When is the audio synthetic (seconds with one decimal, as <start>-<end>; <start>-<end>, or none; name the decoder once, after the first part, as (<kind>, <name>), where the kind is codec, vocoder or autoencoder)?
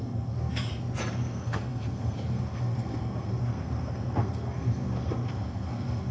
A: 0.0-0.5 (codec, SNAC); 1.1-6.1